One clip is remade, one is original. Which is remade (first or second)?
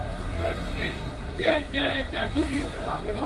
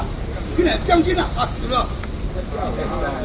first